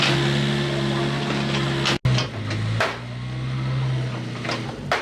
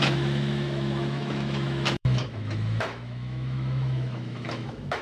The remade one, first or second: second